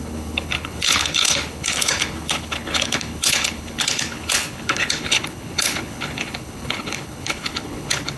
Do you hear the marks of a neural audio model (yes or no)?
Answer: yes